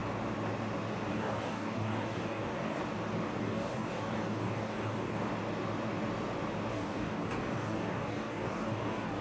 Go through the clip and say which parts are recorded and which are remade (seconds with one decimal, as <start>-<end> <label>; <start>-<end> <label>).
0.0-1.1 recorded; 1.1-2.8 remade; 2.8-3.4 recorded; 3.4-5.3 remade; 5.3-6.7 recorded; 6.7-9.2 remade

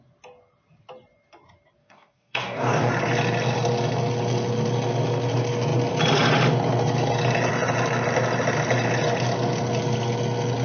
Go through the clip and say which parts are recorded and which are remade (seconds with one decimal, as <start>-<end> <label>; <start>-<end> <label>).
0.0-1.8 recorded; 1.8-2.9 remade; 2.9-10.6 recorded

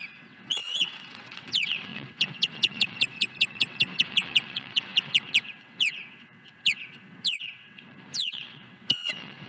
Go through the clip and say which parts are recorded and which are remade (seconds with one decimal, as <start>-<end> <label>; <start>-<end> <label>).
0.0-9.5 remade

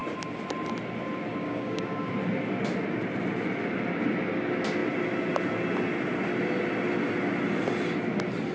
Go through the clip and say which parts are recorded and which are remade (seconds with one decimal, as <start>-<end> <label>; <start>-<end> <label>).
0.0-1.3 recorded; 1.3-2.1 remade; 2.1-8.5 recorded

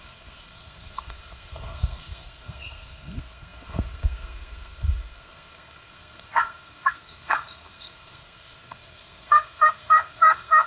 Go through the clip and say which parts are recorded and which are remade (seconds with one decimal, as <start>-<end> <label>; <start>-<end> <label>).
0.0-10.7 remade